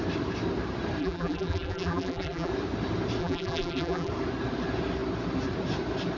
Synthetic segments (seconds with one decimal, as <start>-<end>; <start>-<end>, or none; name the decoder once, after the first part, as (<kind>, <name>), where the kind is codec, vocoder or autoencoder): 1.0-2.5 (vocoder, BigVGAN v2); 3.2-4.1